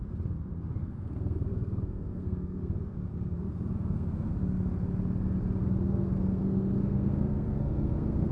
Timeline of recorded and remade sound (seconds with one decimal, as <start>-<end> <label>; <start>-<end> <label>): 0.0-0.8 recorded; 0.8-4.3 remade; 4.3-5.6 recorded; 5.6-8.3 remade